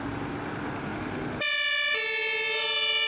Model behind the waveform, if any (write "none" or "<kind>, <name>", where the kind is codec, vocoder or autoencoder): none